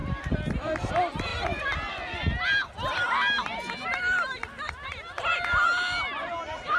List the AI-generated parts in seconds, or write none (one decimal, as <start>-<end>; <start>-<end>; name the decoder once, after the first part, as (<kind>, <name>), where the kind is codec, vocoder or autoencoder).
none